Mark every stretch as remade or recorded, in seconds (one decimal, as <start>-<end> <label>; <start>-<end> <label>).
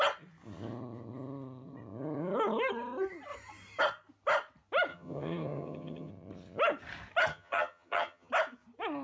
0.0-4.9 recorded; 4.9-6.1 remade; 6.1-7.3 recorded; 7.3-8.3 remade; 8.3-9.0 recorded